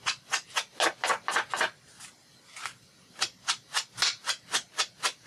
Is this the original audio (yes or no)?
yes